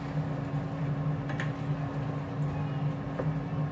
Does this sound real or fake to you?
real